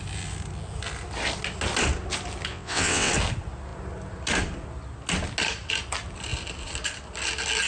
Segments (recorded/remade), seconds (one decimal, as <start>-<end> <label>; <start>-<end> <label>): 0.0-2.5 recorded; 2.5-3.1 remade; 3.1-7.7 recorded